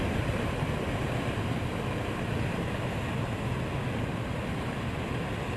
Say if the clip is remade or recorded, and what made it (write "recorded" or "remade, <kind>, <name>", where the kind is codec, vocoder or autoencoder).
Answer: recorded